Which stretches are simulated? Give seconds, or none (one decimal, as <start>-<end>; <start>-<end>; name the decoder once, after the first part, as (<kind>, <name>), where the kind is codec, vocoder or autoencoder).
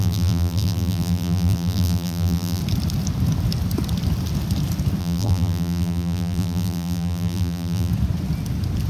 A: 0.0-2.6 (vocoder, BigVGAN v2); 5.0-7.9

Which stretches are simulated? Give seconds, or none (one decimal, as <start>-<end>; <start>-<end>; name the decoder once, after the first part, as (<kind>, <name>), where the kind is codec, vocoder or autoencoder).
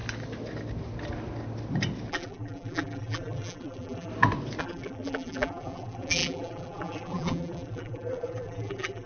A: 2.1-4.1 (vocoder, BigVGAN v2); 4.6-9.1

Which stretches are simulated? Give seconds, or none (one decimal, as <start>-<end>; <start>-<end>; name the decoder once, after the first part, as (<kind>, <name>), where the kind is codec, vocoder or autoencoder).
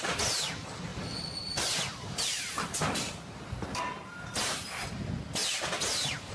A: 0.9-3.3 (vocoder, BigVGAN v2); 5.4-6.3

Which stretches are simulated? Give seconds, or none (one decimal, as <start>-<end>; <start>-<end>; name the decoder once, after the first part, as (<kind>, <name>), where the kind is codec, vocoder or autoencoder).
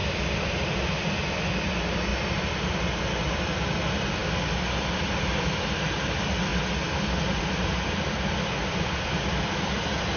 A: 0.0-2.1 (vocoder, BigVGAN v2); 3.0-6.5; 7.4-10.2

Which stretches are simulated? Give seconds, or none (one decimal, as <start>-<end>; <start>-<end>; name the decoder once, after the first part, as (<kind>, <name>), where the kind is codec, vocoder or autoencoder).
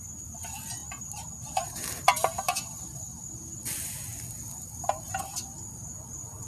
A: 0.8-3.0 (vocoder, BigVGAN v2)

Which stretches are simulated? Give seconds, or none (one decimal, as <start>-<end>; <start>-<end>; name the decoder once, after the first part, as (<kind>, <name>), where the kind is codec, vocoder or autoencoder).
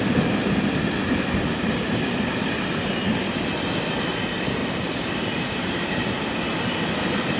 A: 4.6-6.1 (vocoder, BigVGAN v2)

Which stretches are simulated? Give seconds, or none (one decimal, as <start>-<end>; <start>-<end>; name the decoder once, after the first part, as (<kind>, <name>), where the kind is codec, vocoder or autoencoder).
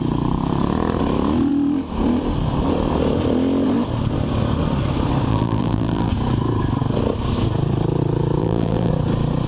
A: 5.3-6.1 (vocoder, BigVGAN v2); 8.4-8.9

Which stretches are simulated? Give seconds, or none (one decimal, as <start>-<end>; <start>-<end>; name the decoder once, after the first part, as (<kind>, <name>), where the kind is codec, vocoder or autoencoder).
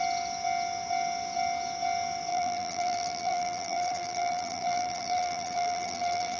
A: 2.3-6.4 (vocoder, BigVGAN v2)